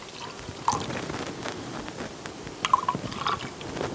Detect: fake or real fake